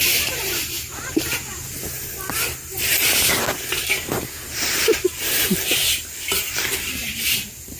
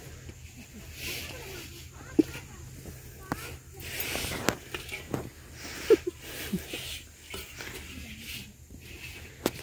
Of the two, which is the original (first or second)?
second